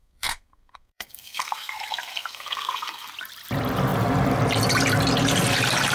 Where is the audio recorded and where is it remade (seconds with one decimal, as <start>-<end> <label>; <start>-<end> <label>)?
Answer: 0.0-3.1 remade; 3.1-5.9 recorded